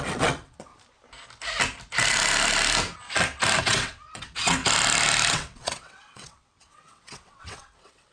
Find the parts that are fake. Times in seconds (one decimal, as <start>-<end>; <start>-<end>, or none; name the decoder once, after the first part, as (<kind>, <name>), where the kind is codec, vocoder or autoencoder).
0.0-0.7 (vocoder, WaveNeXt); 3.6-4.6; 5.3-8.1